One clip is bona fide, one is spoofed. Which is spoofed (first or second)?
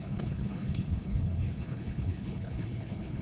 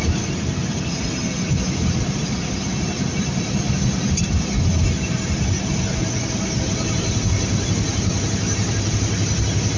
first